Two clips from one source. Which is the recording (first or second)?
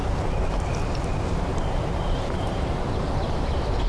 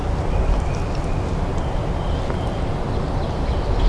second